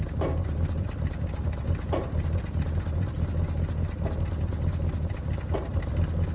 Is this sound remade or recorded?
recorded